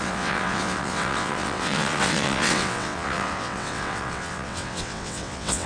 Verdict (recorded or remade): remade